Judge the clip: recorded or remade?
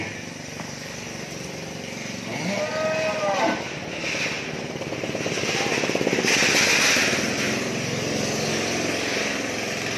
recorded